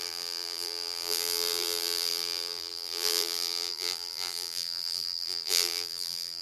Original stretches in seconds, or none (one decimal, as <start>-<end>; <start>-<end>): none